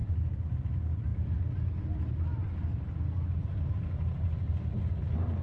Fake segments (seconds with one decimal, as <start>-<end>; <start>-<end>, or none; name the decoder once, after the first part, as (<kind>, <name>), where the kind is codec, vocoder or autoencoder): none